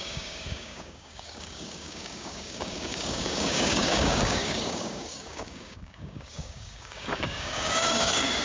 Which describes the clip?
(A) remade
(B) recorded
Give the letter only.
A